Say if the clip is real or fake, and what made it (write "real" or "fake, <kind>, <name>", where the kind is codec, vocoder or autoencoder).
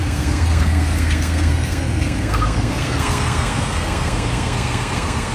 fake, codec, SNAC